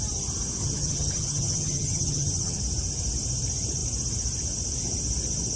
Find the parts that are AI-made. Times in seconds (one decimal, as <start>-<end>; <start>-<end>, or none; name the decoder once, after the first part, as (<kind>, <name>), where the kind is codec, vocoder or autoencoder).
0.6-2.6 (vocoder, HiFi-GAN)